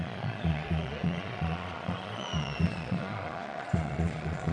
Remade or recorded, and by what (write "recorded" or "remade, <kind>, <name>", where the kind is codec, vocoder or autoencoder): remade, vocoder, Vocos